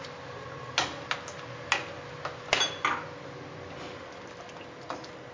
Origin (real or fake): real